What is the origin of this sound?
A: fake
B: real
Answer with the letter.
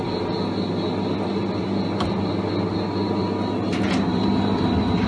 B